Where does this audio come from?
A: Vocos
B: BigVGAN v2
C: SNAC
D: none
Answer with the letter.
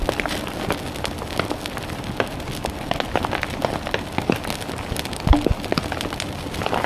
D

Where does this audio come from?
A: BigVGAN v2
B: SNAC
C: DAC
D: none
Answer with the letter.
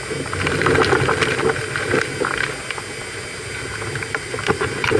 D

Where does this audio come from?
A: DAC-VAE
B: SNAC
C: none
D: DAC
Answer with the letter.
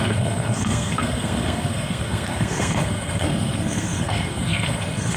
B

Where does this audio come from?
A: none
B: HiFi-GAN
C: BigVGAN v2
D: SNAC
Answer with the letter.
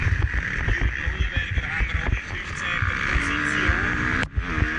A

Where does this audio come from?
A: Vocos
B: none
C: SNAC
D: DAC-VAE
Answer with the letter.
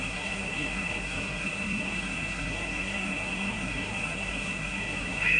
C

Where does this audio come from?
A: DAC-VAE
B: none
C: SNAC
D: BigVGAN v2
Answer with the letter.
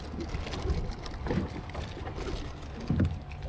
B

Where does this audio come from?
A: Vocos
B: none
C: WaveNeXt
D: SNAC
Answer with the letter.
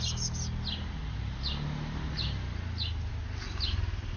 B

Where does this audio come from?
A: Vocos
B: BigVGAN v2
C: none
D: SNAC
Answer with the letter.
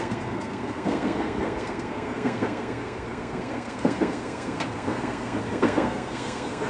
D